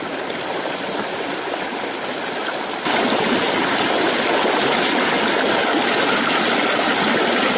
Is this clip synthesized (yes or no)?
no